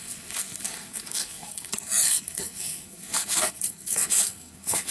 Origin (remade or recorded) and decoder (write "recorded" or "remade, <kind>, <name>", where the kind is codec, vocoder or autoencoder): remade, codec, SNAC